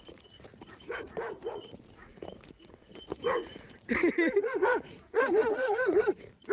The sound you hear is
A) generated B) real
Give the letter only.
A